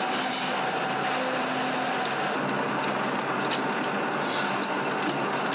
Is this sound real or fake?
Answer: real